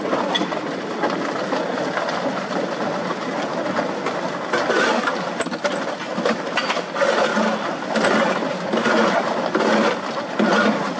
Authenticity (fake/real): real